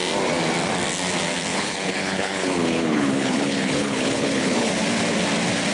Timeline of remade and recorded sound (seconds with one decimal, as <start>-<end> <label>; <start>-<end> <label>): 0.0-1.5 recorded; 1.5-4.7 remade; 4.7-5.7 recorded